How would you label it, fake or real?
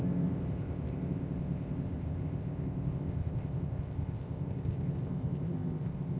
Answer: fake